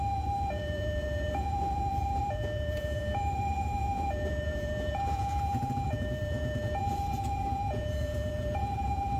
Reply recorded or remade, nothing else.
remade